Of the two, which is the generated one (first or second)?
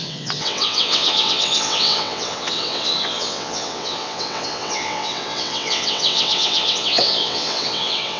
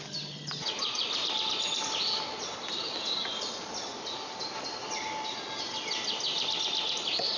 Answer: first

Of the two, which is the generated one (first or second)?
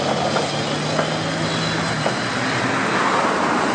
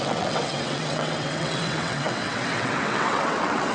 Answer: second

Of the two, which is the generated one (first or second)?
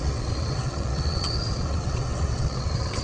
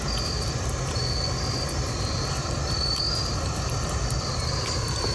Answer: first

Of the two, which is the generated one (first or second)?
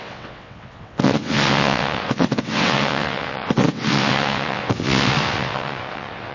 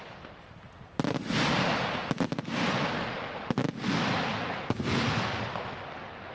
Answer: first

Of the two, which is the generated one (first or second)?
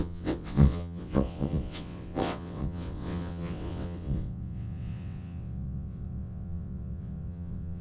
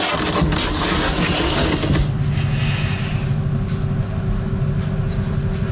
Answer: first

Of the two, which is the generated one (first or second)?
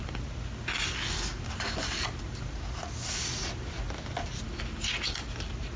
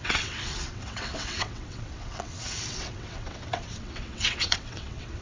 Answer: second